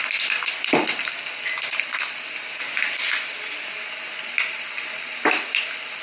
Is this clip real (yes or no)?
yes